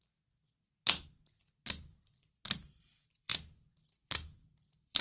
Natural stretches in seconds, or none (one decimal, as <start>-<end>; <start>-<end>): 0.0-2.6; 3.3-3.8